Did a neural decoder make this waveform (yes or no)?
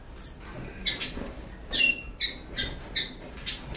no